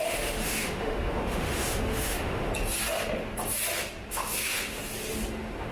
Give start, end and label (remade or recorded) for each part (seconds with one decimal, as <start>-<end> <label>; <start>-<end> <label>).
0.0-2.5 remade; 2.5-4.1 recorded; 4.1-4.8 remade; 4.8-5.3 recorded; 5.3-5.7 remade